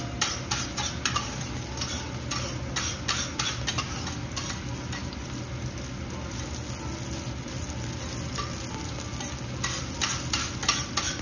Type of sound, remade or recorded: recorded